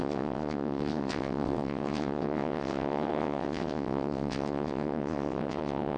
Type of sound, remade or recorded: remade